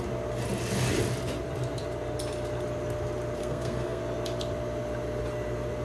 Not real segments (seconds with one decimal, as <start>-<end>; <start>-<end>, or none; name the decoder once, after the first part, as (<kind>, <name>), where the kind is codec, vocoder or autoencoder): 3.4-4.0 (codec, SNAC)